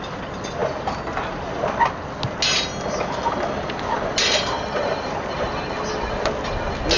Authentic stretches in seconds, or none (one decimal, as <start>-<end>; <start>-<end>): 0.0-7.0